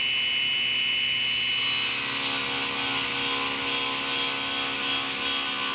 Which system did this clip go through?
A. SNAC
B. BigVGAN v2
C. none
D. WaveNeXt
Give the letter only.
C